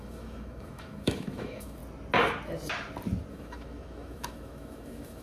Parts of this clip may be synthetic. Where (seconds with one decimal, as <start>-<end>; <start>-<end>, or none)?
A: 0.0-1.8; 3.3-5.2